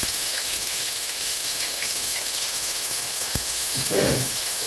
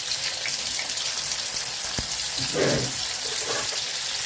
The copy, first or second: first